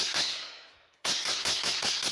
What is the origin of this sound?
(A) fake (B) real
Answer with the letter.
A